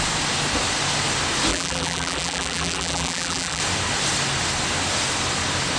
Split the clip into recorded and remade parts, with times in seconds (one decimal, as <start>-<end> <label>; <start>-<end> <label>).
0.0-1.5 recorded; 1.5-3.6 remade; 3.6-5.8 recorded